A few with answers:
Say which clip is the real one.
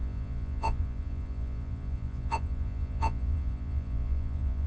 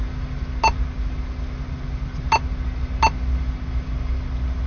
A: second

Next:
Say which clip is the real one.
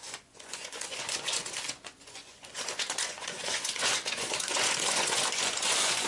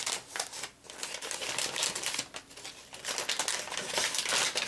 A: second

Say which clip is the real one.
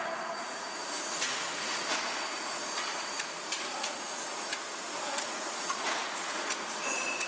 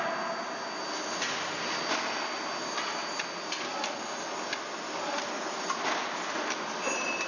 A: second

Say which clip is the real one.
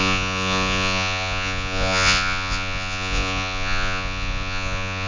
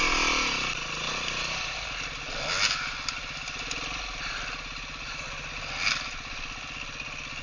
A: second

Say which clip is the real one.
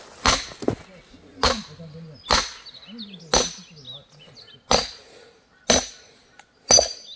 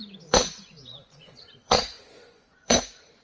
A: first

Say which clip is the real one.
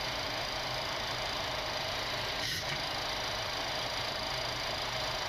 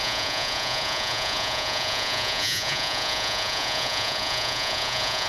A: first